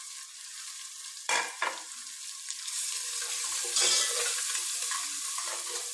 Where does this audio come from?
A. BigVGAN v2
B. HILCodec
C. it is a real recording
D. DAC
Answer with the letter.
A